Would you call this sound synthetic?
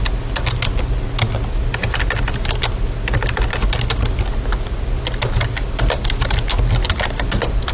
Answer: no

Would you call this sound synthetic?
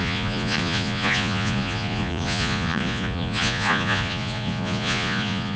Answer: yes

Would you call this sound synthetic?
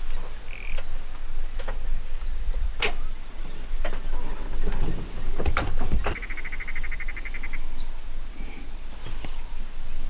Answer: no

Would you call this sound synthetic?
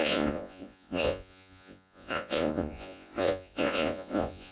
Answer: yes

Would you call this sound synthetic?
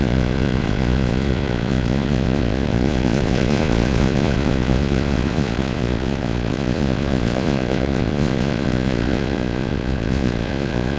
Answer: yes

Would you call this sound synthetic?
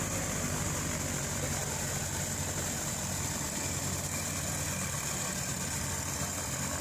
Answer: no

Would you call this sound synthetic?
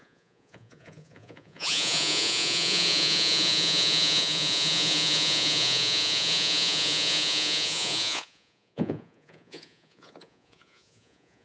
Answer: yes